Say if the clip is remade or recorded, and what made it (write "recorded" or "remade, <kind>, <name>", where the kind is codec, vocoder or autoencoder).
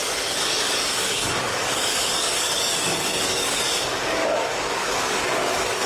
remade, codec, DAC